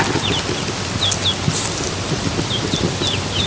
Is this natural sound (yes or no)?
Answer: yes